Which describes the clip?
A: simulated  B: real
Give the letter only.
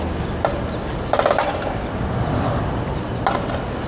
B